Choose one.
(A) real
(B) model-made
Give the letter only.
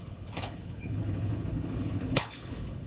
B